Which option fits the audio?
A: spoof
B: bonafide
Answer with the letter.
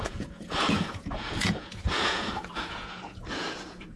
A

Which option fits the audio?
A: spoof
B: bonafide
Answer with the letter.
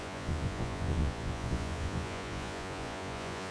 A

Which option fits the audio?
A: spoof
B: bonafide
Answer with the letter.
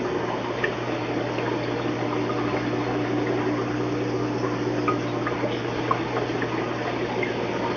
B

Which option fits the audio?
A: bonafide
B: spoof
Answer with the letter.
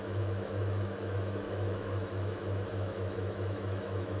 B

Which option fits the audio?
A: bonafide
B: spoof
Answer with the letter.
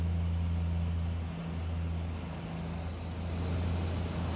A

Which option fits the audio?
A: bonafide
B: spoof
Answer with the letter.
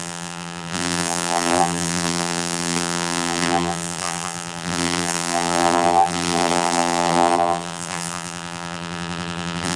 B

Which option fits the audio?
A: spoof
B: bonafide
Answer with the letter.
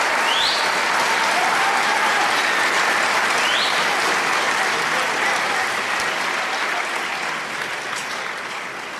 B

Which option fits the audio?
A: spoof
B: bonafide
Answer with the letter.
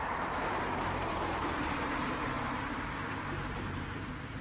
A